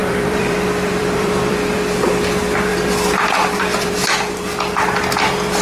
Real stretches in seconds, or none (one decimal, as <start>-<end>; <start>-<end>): 1.8-2.7; 3.9-5.6